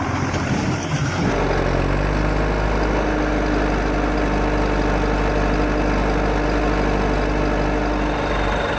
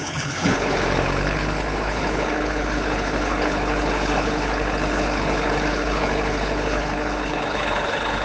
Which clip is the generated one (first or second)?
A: second